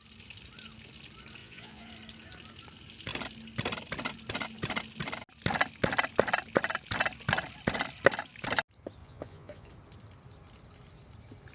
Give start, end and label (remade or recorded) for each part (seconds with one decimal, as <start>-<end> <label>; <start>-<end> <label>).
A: 0.0-1.4 recorded; 1.4-1.9 remade; 1.9-9.0 recorded; 9.0-9.7 remade; 9.7-11.5 recorded